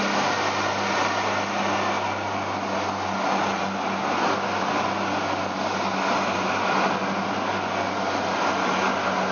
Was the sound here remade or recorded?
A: recorded